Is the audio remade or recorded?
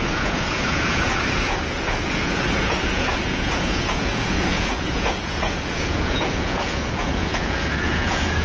remade